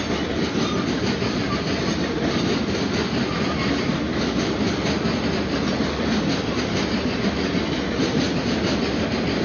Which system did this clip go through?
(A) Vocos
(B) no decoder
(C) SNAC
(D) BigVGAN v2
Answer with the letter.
B